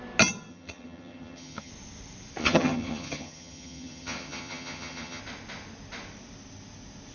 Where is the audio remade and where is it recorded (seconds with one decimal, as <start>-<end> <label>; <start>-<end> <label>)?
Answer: 0.0-0.5 recorded; 0.5-1.7 remade; 1.7-2.4 recorded; 2.4-5.2 remade; 5.2-7.1 recorded